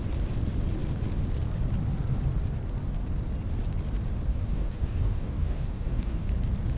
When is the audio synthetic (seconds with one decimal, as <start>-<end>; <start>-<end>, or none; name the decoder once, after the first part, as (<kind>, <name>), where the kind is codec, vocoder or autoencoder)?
4.3-6.3 (codec, DAC)